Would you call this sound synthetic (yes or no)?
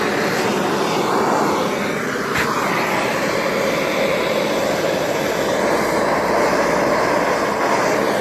no